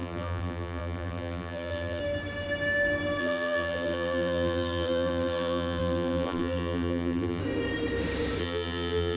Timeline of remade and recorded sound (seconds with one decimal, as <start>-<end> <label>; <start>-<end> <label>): 0.0-2.0 remade; 2.0-3.2 recorded; 3.2-7.4 remade; 7.4-8.4 recorded; 8.4-9.2 remade

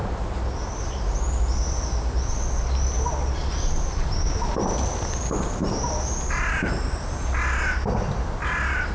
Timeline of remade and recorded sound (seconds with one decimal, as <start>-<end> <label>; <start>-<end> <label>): 0.0-8.9 recorded

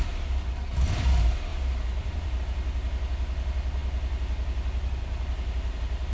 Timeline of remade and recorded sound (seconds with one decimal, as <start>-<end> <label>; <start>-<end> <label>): 0.0-1.5 recorded; 1.5-2.4 remade; 2.4-6.1 recorded

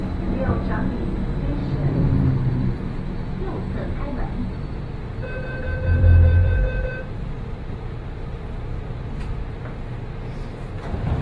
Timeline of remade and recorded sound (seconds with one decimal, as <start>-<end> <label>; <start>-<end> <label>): 0.0-1.6 recorded; 1.6-2.8 remade; 2.8-5.2 recorded; 5.2-9.4 remade; 9.4-11.2 recorded

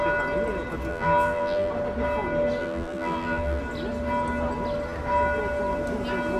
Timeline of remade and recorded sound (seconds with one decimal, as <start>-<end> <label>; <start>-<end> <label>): 0.0-0.9 recorded; 0.9-1.7 remade; 1.7-2.6 recorded; 2.6-3.6 remade; 3.6-6.4 recorded

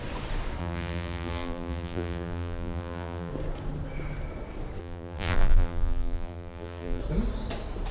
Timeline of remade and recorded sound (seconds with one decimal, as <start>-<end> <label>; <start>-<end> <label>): 0.0-0.6 recorded; 0.6-3.3 remade; 3.3-4.8 recorded; 4.8-7.0 remade; 7.0-7.9 recorded

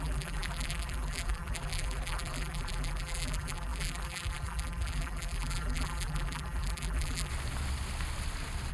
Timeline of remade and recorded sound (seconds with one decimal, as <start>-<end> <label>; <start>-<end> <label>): 0.0-7.3 remade; 7.3-8.7 recorded

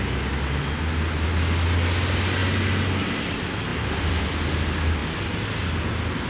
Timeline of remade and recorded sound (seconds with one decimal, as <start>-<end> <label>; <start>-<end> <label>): 0.0-3.7 recorded; 3.7-4.2 remade; 4.2-6.3 recorded